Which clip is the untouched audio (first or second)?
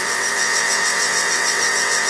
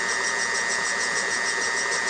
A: second